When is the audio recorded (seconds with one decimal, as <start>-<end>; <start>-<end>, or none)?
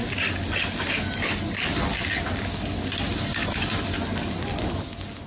0.0-5.3